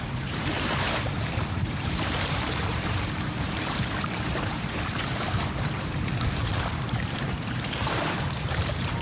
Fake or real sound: fake